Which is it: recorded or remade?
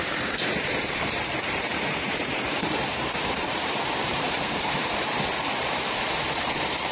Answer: remade